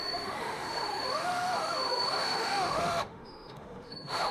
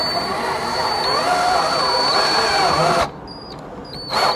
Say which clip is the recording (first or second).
second